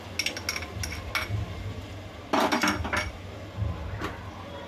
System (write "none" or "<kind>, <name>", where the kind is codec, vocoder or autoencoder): none